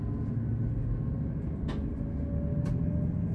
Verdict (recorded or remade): recorded